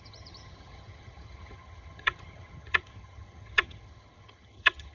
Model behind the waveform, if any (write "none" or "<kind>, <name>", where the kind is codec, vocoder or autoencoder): vocoder, HiFi-GAN